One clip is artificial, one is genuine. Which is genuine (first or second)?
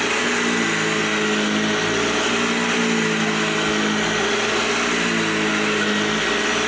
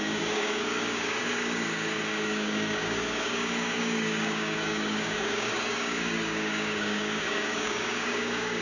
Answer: first